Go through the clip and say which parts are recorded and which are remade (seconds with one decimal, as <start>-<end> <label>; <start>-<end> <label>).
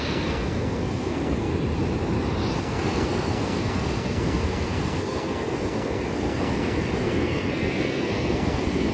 0.0-1.5 remade; 1.5-2.6 recorded; 2.6-8.9 remade